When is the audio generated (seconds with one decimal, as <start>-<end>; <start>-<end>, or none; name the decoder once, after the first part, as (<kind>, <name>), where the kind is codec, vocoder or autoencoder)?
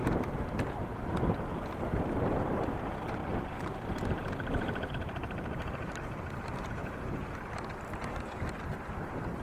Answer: 0.0-1.5 (vocoder, BigVGAN v2); 2.0-6.8; 7.5-9.4